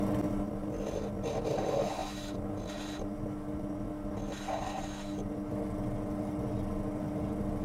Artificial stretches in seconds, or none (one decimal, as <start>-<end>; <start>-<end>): none